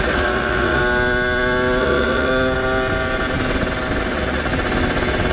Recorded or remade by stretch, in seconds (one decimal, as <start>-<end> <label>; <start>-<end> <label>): 0.0-0.8 remade; 0.8-1.8 recorded; 1.8-2.3 remade; 2.3-4.0 recorded; 4.0-4.5 remade; 4.5-5.3 recorded